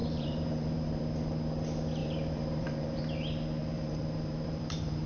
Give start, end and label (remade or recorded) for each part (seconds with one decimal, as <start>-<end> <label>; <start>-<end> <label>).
0.0-1.0 remade; 1.0-2.0 recorded; 2.0-3.0 remade; 3.0-3.6 recorded; 3.6-5.1 remade

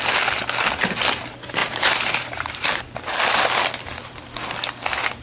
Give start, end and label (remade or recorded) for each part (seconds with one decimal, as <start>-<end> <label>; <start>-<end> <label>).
0.0-1.6 recorded; 1.6-2.8 remade; 2.8-5.2 recorded

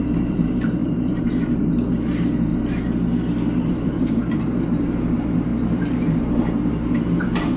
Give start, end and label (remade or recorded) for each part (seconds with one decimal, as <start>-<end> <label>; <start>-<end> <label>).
0.0-2.5 remade; 2.5-3.6 recorded; 3.6-7.6 remade

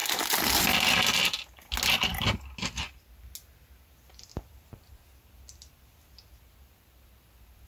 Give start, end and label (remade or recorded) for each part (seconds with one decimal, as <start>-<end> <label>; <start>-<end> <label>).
0.0-7.7 recorded

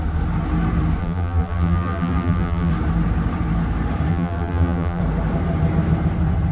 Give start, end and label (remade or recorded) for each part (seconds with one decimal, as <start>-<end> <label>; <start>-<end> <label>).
0.0-1.0 recorded; 1.0-2.7 remade; 2.7-4.1 recorded; 4.1-5.0 remade; 5.0-6.5 recorded